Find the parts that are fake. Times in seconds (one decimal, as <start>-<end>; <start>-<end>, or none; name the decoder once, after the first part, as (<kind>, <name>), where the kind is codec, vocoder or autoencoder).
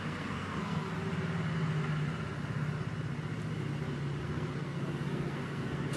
0.0-0.9 (codec, SNAC); 4.2-6.0